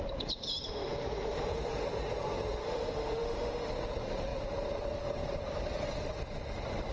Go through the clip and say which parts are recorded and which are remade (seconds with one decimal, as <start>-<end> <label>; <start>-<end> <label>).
0.0-2.6 recorded; 2.6-3.7 remade; 3.7-6.9 recorded

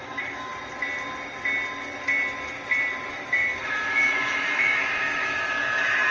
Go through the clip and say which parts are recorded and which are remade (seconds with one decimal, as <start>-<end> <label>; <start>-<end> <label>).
0.0-0.5 remade; 0.5-3.1 recorded; 3.1-6.1 remade

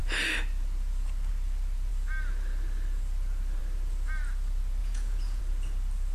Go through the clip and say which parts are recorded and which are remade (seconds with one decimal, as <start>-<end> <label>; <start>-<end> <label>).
0.0-4.8 recorded; 4.8-5.4 remade; 5.4-6.1 recorded

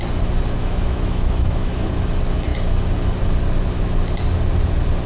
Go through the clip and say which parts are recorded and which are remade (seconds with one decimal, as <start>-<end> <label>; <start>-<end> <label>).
0.0-0.6 recorded; 0.6-1.9 remade; 1.9-5.1 recorded

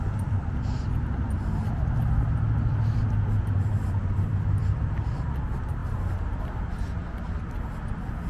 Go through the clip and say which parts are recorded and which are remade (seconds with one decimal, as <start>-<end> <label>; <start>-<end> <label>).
0.0-8.3 recorded